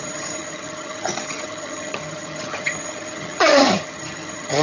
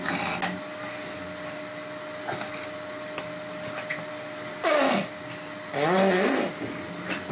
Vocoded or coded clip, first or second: first